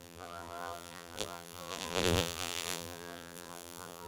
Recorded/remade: remade